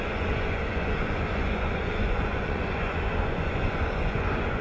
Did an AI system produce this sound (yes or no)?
yes